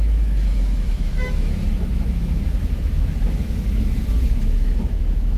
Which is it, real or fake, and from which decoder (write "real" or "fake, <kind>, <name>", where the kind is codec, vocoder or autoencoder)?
fake, autoencoder, DAC-VAE